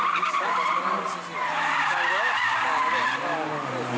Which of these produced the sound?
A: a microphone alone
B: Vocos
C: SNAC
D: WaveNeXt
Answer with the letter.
A